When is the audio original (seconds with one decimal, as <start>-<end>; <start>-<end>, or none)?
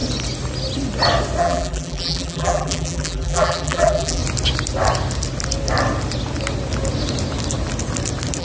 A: 0.0-1.4; 4.2-8.4